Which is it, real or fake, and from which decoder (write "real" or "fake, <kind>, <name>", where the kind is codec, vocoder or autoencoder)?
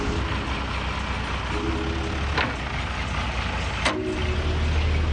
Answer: real